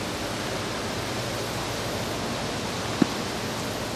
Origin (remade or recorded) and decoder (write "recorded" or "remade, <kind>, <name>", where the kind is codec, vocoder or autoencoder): recorded